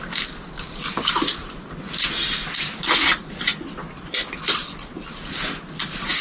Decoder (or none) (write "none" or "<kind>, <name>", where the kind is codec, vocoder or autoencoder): none